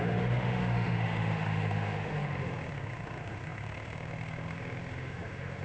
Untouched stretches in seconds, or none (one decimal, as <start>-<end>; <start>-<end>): none